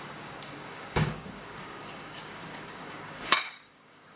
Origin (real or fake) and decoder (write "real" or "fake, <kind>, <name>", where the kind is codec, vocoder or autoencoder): fake, codec, DAC